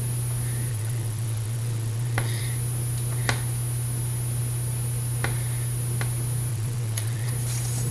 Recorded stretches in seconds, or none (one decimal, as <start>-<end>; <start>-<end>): 0.0-0.7; 2.4-6.5; 7.3-7.9

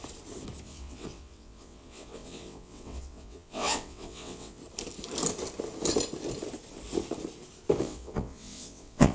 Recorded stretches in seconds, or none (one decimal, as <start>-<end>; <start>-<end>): 0.0-0.6; 4.6-7.8

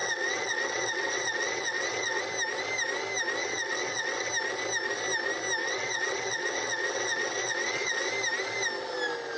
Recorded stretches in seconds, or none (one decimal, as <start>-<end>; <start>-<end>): 2.2-3.4; 4.3-5.6; 8.1-9.4

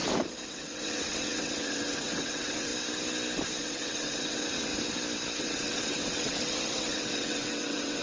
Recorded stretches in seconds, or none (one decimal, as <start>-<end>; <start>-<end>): 0.0-0.5; 2.7-3.6; 4.7-5.4

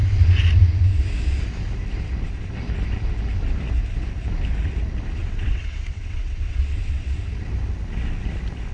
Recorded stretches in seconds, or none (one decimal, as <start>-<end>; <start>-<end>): 0.0-5.2; 7.2-8.7

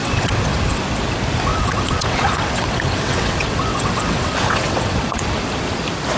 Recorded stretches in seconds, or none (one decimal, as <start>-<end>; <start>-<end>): 0.8-1.5; 5.2-6.2